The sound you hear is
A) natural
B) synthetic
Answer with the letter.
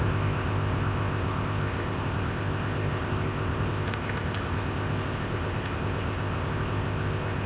B